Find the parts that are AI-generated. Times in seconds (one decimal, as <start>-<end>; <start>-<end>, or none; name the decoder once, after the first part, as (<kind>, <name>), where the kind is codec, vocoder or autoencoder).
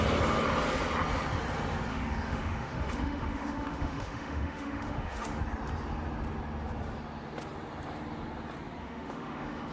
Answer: 1.9-5.4 (autoencoder, DAC-VAE); 8.8-9.7